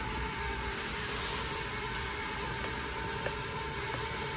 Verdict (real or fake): real